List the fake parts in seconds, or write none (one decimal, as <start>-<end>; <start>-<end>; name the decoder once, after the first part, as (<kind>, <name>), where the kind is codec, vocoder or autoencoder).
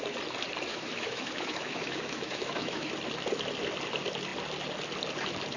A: 0.7-2.9 (autoencoder, DAC-VAE)